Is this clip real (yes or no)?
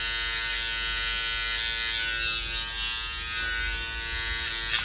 yes